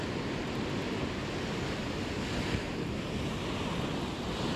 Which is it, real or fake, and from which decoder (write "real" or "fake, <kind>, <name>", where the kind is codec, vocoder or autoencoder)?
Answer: real